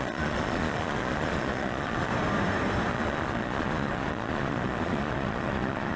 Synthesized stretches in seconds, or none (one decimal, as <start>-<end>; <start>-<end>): 0.0-2.1; 2.9-6.0